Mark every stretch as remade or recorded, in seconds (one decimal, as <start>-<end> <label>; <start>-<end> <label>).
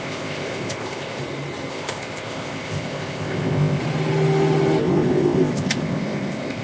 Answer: 0.0-1.2 remade; 1.2-1.7 recorded; 1.7-3.8 remade; 3.8-4.8 recorded; 4.8-6.6 remade